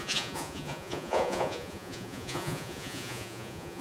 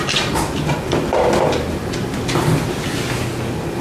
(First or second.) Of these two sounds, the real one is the second